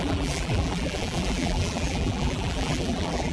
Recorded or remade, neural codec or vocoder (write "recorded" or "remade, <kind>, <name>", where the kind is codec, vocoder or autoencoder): remade, vocoder, BigVGAN v2